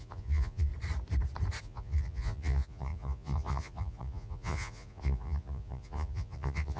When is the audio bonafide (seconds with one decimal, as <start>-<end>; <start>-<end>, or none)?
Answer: 0.7-1.6

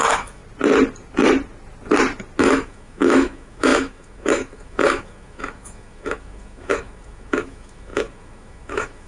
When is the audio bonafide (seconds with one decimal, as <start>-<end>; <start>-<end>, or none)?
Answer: 0.4-2.4

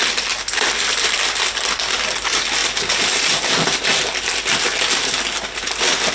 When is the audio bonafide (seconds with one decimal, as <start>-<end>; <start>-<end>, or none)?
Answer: 0.0-6.1

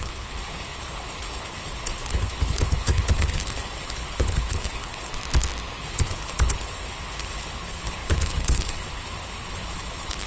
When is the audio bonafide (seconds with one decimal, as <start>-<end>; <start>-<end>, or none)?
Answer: 5.1-5.8

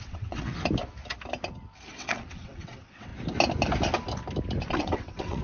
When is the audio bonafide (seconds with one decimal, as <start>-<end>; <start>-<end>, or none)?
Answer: 0.5-1.9; 3.1-4.7

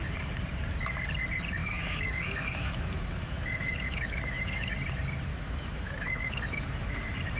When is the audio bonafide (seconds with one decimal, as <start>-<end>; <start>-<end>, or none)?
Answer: 0.0-1.6; 4.7-5.3; 6.9-7.4

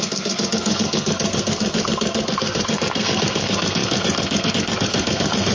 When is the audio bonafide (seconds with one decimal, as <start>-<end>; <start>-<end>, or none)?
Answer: none

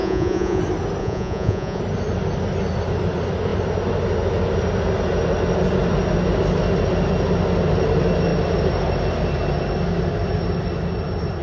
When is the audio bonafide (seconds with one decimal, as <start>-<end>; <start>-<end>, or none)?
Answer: 0.6-1.0; 1.8-11.4